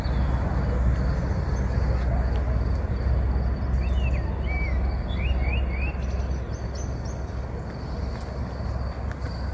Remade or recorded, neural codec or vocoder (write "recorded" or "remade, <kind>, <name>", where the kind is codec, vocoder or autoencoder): recorded